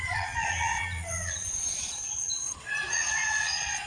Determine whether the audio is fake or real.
fake